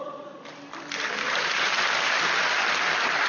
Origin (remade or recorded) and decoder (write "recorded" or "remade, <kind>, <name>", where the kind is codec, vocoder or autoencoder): recorded